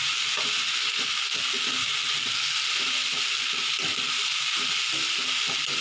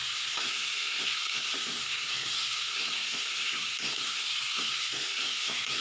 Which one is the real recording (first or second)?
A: first